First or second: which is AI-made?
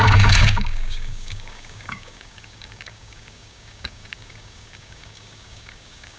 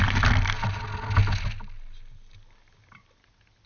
first